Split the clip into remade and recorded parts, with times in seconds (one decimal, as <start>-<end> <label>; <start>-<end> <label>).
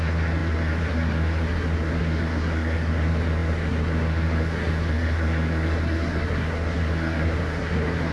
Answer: 0.0-8.1 remade